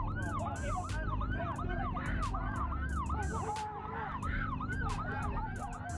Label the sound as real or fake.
real